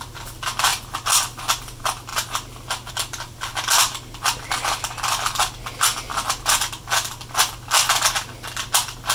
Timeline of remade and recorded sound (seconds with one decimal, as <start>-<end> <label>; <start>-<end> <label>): 0.0-0.7 recorded; 0.7-1.4 remade; 1.4-9.1 recorded